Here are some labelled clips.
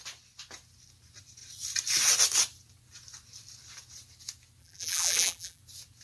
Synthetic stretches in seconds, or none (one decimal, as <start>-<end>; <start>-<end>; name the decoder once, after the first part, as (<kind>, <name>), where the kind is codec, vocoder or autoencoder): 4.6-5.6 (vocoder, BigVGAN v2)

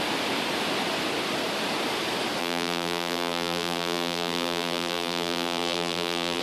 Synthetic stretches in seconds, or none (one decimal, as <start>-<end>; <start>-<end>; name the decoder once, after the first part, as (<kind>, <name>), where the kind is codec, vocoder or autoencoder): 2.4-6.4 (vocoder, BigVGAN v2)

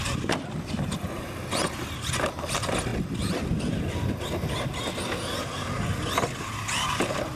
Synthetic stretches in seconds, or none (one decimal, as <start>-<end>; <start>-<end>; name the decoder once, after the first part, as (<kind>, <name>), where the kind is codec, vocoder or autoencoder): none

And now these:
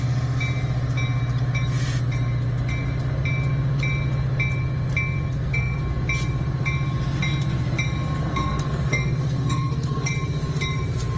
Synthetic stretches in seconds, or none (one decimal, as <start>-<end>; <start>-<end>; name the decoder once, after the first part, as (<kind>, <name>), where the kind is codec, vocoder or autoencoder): 5.3-5.8 (codec, SNAC); 8.2-10.1

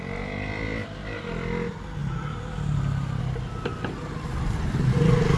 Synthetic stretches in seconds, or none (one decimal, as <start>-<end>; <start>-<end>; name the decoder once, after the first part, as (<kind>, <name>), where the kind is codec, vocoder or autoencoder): none

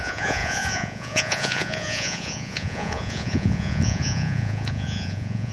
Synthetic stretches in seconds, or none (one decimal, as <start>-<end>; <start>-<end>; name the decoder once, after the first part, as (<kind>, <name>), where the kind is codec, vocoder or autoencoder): 0.0-5.5 (vocoder, Vocos)

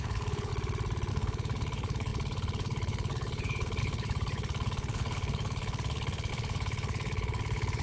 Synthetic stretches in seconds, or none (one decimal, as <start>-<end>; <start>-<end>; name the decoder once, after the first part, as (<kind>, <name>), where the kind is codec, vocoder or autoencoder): 0.0-0.5 (codec, HILCodec); 1.1-7.8